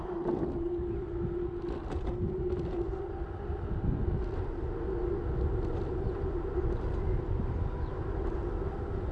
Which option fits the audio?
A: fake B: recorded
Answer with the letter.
B